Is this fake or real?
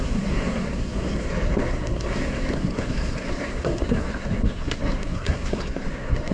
fake